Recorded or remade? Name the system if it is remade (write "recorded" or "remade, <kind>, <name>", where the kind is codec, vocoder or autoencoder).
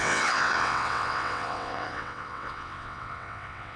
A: remade, vocoder, WaveNeXt